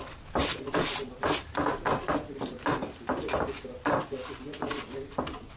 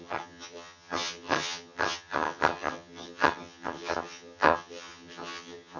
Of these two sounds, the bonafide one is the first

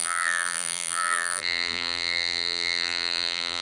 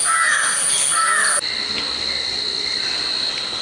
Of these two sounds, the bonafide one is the second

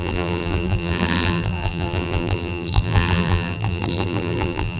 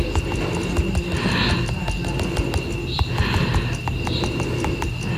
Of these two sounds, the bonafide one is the second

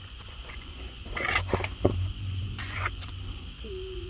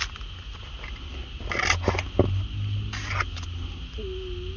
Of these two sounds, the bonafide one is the second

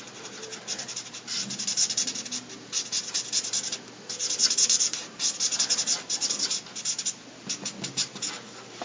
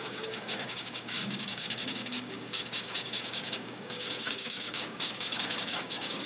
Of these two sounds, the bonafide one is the first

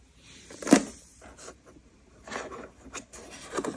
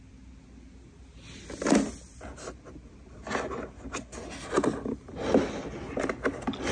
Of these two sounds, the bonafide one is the second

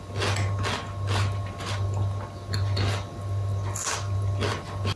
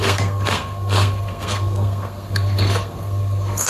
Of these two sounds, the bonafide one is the first